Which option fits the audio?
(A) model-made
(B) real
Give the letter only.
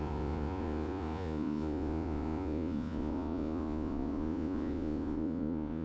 A